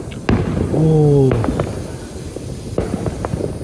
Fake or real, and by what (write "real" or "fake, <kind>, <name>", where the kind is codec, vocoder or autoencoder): real